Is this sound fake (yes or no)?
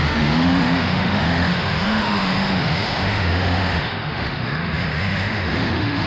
yes